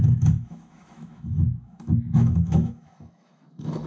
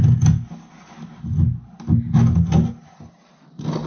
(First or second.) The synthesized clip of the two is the first